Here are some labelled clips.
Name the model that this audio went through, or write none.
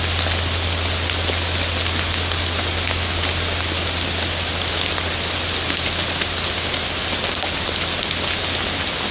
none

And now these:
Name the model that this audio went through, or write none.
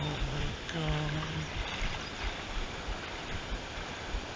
none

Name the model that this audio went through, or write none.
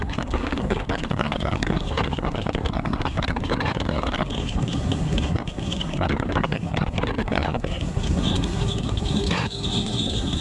codec, SNAC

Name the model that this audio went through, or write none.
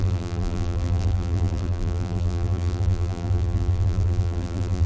vocoder, BigVGAN v2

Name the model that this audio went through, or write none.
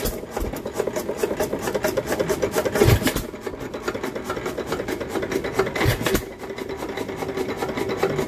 none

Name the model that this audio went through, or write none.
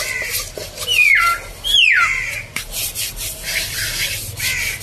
none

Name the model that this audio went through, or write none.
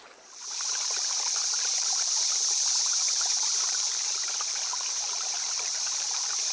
vocoder, BigVGAN v2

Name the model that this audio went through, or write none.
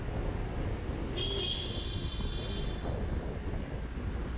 none